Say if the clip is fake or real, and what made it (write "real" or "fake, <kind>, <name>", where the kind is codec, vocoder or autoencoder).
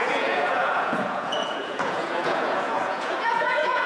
fake, vocoder, Vocos